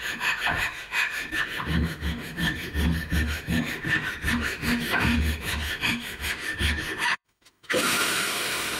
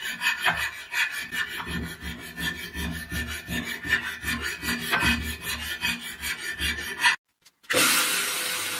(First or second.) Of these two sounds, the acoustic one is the second